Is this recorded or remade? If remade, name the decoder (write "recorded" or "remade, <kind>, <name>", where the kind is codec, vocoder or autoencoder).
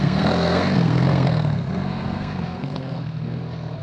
remade, codec, SNAC